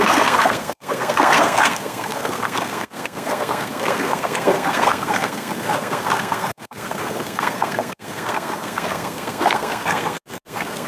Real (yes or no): no